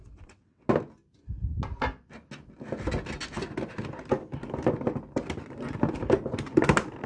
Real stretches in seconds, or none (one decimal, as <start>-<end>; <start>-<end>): 0.7-7.1